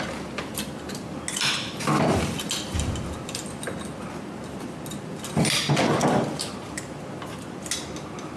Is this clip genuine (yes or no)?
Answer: yes